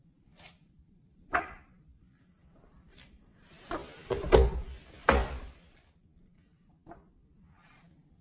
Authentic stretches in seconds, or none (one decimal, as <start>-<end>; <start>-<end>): 0.0-0.6; 2.3-8.2